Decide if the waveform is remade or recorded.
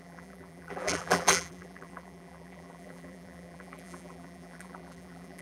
remade